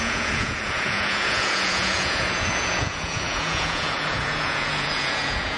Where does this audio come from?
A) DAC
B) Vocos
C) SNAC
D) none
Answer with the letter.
B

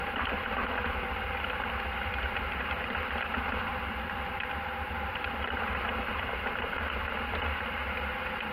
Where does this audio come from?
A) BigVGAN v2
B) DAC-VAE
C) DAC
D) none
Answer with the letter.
A